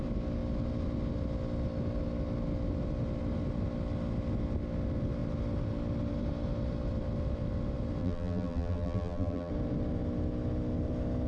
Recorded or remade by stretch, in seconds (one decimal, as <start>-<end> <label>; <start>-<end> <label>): 0.0-8.0 recorded; 8.0-9.5 remade; 9.5-11.3 recorded

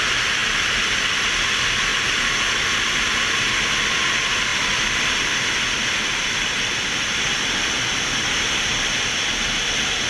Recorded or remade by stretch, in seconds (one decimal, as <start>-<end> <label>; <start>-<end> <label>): 0.0-0.4 recorded; 0.4-1.3 remade; 1.3-1.9 recorded; 1.9-3.0 remade; 3.0-4.5 recorded; 4.5-7.7 remade; 7.7-10.1 recorded

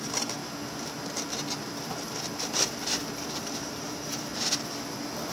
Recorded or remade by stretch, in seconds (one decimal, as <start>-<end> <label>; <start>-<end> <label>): 0.0-0.4 remade; 0.4-3.6 recorded; 3.6-4.3 remade; 4.3-5.3 recorded

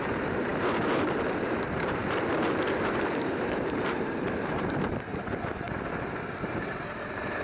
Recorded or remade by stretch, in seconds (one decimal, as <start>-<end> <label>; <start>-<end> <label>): 0.0-2.0 remade; 2.0-2.7 recorded; 2.7-5.1 remade; 5.1-6.9 recorded; 6.9-7.4 remade